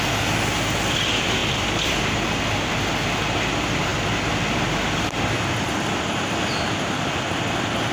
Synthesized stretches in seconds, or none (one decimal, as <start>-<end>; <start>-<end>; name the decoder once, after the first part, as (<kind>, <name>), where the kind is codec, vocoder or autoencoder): none